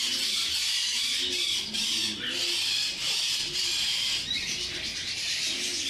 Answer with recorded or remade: recorded